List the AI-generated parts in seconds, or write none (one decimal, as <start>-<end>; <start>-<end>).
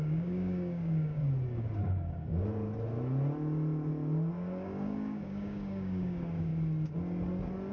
0.0-1.2; 1.8-2.3; 4.3-6.5